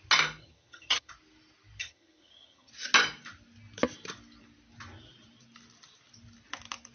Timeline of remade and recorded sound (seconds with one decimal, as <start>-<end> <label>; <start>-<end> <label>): 0.0-0.4 recorded; 0.4-1.1 remade; 1.1-1.8 recorded; 1.8-2.7 remade; 2.7-6.9 recorded